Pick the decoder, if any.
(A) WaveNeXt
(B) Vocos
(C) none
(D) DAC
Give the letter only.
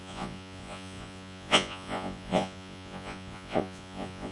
B